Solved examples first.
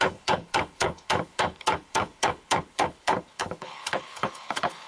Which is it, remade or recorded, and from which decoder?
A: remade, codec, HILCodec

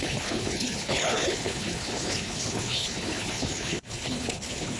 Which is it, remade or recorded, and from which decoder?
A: remade, codec, HILCodec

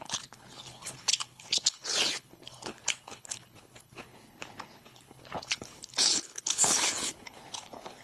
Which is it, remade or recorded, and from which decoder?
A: remade, codec, HILCodec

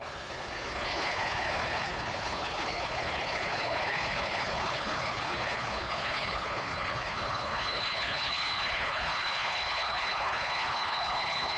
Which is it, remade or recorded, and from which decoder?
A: remade, codec, HILCodec